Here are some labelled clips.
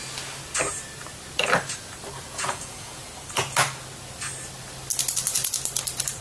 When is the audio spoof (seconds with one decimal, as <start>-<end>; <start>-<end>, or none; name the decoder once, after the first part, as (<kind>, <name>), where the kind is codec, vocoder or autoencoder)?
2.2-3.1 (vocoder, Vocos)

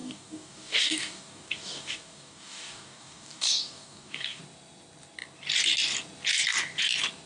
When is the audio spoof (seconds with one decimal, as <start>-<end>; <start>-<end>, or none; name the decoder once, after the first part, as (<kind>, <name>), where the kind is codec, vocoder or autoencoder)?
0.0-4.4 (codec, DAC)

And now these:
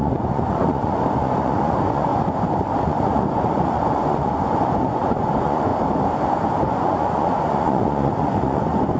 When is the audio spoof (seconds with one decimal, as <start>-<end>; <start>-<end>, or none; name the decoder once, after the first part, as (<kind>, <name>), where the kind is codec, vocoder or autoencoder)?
0.0-2.1 (vocoder, Vocos); 2.8-5.7; 6.7-9.0

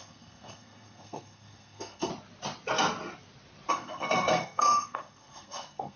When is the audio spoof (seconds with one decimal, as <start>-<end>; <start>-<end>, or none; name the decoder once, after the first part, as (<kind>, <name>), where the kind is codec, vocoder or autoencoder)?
0.0-2.1 (codec, SNAC); 3.7-6.0